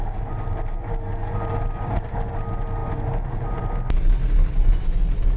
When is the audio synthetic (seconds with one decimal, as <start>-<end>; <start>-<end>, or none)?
1.2-2.3